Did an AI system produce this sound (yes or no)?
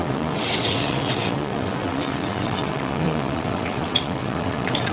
yes